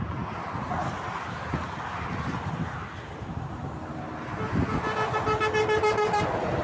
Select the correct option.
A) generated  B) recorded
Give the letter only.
B